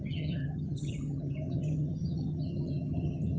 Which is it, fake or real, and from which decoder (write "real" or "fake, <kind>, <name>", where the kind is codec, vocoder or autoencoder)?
fake, vocoder, HiFi-GAN